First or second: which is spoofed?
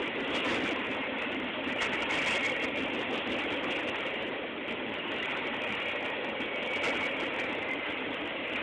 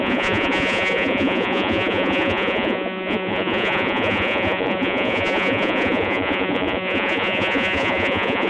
second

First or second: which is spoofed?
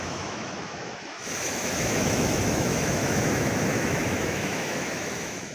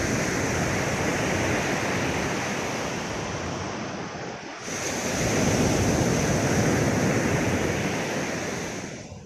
first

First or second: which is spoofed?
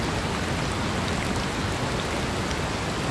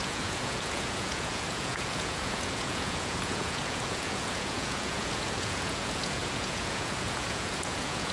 second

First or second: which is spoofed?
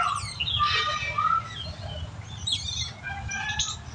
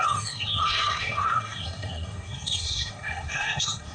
second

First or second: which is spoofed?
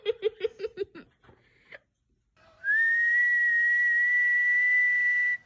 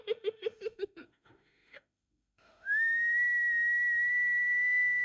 second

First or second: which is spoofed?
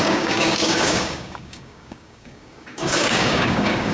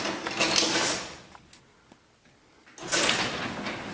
first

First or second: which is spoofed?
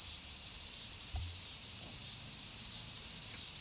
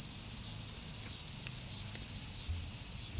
first